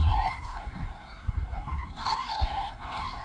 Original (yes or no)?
no